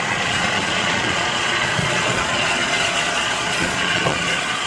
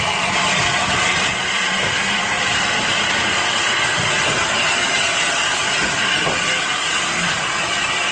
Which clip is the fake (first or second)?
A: first